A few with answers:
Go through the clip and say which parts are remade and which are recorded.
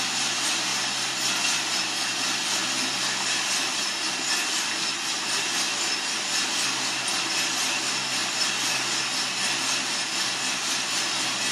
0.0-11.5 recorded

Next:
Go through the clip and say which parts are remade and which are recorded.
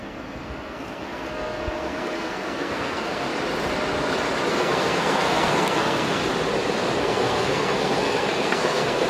0.0-3.3 remade; 3.3-4.5 recorded; 4.5-6.2 remade; 6.2-7.0 recorded; 7.0-9.1 remade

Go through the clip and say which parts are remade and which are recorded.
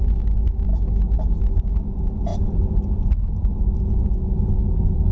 0.0-5.1 recorded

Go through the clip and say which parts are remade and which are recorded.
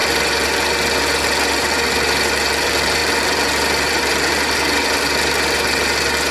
0.0-6.3 recorded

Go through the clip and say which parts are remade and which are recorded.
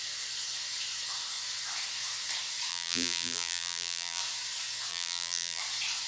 0.0-2.7 recorded; 2.7-4.2 remade; 4.2-4.9 recorded; 4.9-5.6 remade; 5.6-6.1 recorded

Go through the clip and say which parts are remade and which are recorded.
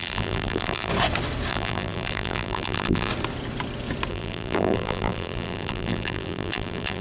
0.0-0.9 remade; 0.9-1.5 recorded; 1.5-3.1 remade; 3.1-4.1 recorded; 4.1-7.0 remade